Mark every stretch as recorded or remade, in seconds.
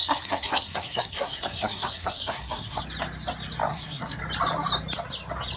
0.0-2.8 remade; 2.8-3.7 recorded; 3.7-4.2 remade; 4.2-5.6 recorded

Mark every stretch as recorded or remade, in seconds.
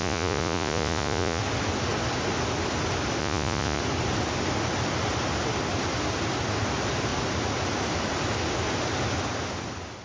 0.0-1.4 remade; 1.4-3.2 recorded; 3.2-3.8 remade; 3.8-10.0 recorded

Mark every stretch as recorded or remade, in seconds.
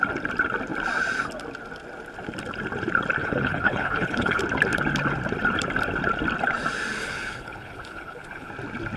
0.0-3.2 recorded; 3.2-4.4 remade; 4.4-7.0 recorded; 7.0-8.5 remade; 8.5-9.0 recorded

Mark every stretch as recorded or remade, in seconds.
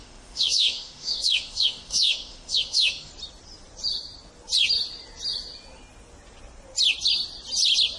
0.0-3.1 remade; 3.1-8.0 recorded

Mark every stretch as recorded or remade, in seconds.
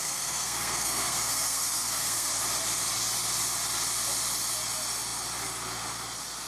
0.0-2.3 remade; 2.3-6.5 recorded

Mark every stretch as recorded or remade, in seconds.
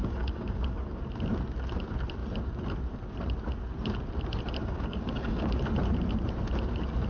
0.0-1.0 remade; 1.0-4.6 recorded; 4.6-5.6 remade; 5.6-7.1 recorded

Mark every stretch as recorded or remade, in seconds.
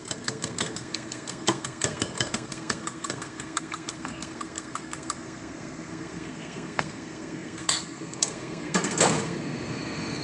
0.0-10.2 remade